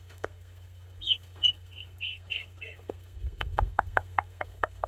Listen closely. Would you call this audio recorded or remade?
remade